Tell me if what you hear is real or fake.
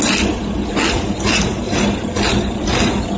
real